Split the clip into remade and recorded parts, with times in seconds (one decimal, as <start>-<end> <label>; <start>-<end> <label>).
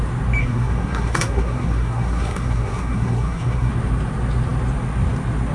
0.0-0.4 recorded; 0.4-3.7 remade; 3.7-5.5 recorded